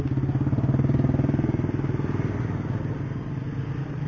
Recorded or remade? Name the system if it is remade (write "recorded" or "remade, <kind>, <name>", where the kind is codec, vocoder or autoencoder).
recorded